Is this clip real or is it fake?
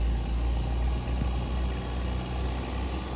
real